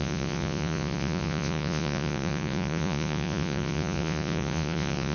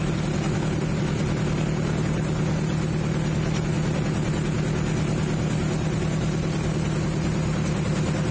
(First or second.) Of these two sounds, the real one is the second